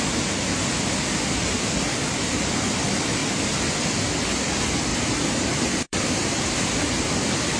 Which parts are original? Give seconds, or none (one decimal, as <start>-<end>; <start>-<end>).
0.0-4.9; 6.8-7.6